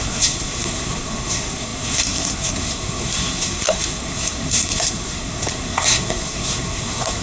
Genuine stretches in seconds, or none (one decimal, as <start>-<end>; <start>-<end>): none

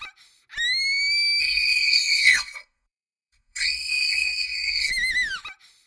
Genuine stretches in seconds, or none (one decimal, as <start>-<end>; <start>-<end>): 0.0-1.4; 4.9-5.9

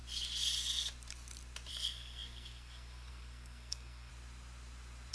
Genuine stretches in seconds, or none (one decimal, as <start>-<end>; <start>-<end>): 0.0-1.7; 4.1-5.1

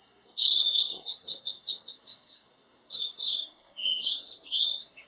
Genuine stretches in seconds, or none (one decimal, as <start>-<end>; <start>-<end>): none

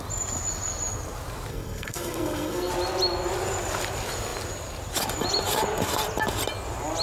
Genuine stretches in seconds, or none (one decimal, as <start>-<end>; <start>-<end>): 0.0-1.5; 2.7-7.0